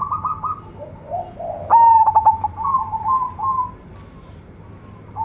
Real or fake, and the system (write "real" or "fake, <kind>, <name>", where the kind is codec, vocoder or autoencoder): real